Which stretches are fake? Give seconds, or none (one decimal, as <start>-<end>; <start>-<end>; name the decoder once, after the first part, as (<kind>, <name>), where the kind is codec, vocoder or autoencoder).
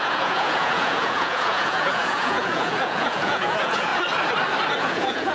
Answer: 0.0-3.9 (vocoder, Vocos); 4.8-5.3